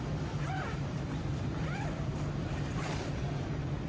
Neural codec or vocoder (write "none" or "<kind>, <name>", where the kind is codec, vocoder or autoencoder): vocoder, BigVGAN v2